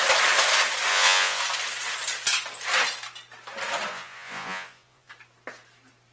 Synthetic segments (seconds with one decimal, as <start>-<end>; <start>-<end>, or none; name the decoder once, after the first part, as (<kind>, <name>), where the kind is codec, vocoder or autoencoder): 0.9-1.4 (vocoder, Vocos); 3.9-5.1